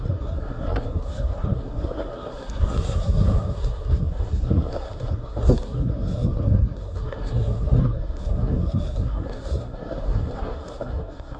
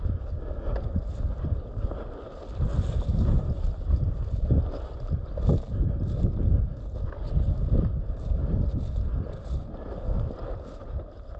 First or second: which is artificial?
first